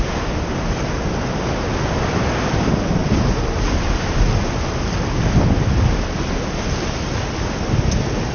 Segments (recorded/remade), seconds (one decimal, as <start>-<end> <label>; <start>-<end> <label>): 0.0-8.3 recorded